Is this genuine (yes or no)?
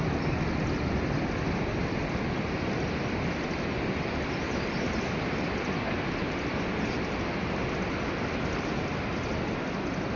yes